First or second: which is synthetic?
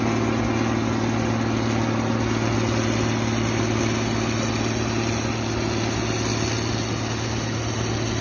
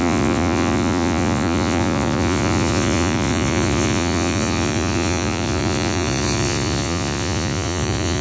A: second